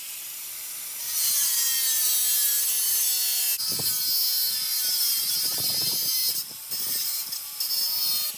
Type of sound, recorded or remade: recorded